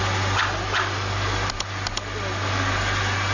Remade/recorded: recorded